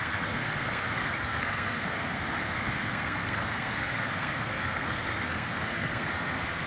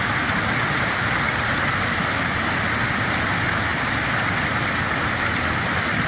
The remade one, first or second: first